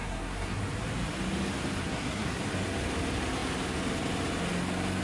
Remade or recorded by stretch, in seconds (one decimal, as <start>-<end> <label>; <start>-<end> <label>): 0.0-0.6 remade; 0.6-1.8 recorded; 1.8-2.4 remade; 2.4-5.0 recorded